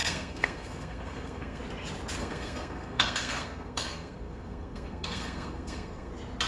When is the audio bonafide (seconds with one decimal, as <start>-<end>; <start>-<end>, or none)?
1.6-2.2; 6.1-6.5